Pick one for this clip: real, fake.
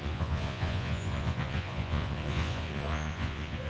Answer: fake